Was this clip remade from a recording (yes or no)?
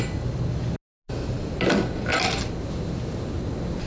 no